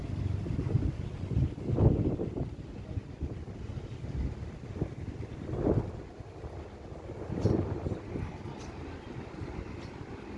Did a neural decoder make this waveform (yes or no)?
no